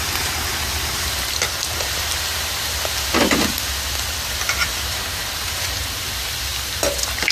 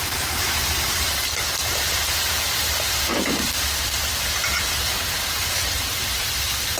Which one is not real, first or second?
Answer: second